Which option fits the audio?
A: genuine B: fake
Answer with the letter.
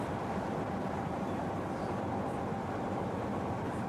A